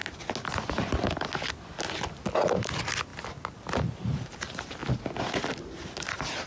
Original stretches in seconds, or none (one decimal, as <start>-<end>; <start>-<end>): 0.0-6.5